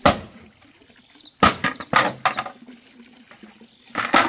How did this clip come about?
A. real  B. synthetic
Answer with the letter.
A